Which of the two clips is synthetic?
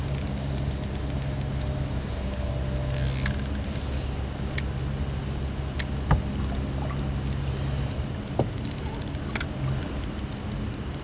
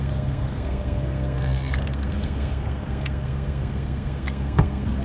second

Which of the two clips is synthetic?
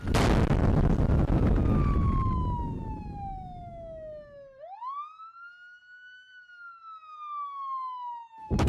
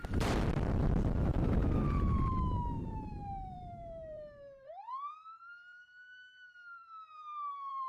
second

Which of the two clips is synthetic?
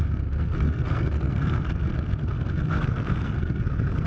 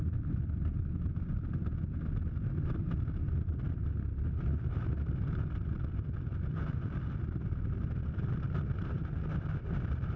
first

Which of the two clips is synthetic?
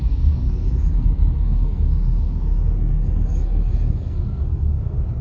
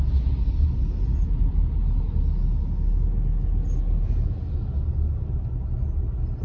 first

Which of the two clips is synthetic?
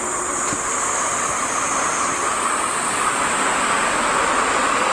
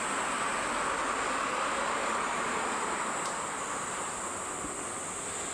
first